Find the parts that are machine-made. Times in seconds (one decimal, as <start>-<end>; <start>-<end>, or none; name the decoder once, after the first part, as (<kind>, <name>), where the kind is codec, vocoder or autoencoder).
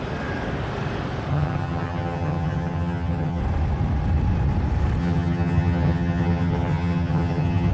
1.3-3.4 (vocoder, HiFi-GAN); 5.0-7.7